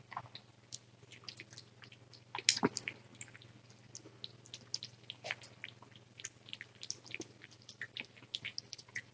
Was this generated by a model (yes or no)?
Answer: no